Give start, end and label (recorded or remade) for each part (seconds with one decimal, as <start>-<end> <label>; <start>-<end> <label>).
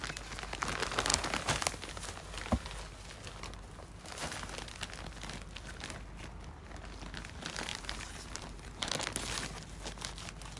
0.0-7.7 recorded; 7.7-8.9 remade; 8.9-10.6 recorded